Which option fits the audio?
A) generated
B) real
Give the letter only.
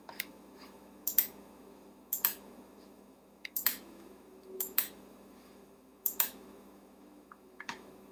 A